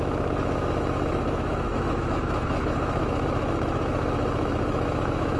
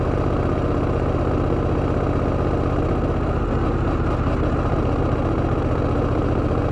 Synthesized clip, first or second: first